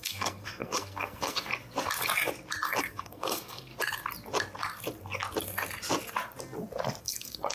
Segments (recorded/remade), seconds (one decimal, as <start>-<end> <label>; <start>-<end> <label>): 0.0-1.5 remade; 1.5-2.8 recorded; 2.8-3.7 remade; 3.7-7.0 recorded; 7.0-7.5 remade

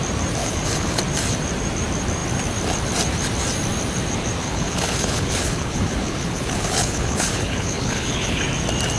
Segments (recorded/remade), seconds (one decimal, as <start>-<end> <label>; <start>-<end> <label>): 0.0-0.4 recorded; 0.4-1.0 remade; 1.0-4.4 recorded; 4.4-8.4 remade; 8.4-9.0 recorded

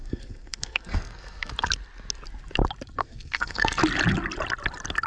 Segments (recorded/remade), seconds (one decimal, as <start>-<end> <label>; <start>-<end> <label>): 0.0-1.5 remade; 1.5-3.0 recorded; 3.0-3.8 remade; 3.8-5.1 recorded

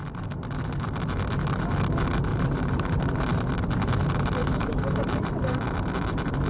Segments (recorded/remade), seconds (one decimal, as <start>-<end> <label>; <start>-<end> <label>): 0.0-2.3 recorded; 2.3-3.0 remade; 3.0-4.4 recorded; 4.4-5.6 remade; 5.6-6.5 recorded

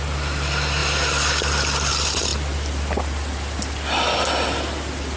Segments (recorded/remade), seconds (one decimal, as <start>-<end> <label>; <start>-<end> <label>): 0.0-5.2 recorded

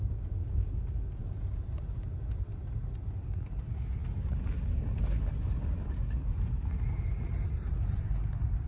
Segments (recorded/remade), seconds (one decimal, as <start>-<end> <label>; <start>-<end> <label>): 0.0-8.7 recorded

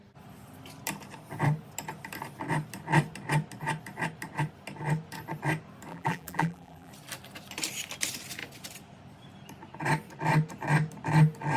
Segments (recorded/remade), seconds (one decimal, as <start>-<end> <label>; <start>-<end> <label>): 0.0-5.9 recorded; 5.9-6.9 remade; 6.9-11.6 recorded